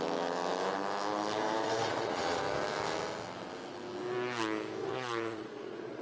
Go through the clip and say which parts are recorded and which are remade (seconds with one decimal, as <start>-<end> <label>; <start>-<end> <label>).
0.0-1.6 recorded; 1.6-2.4 remade; 2.4-4.8 recorded; 4.8-6.0 remade